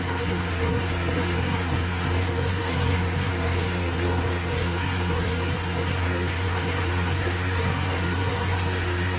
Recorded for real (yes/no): no